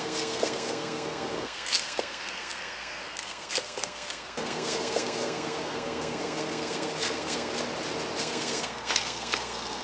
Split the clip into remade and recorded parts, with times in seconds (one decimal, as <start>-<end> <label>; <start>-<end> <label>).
0.0-7.5 remade; 7.5-8.2 recorded; 8.2-9.8 remade